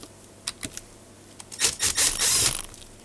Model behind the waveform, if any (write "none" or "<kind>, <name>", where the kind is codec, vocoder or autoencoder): none